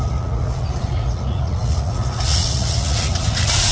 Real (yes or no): no